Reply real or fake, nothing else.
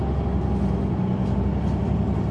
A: real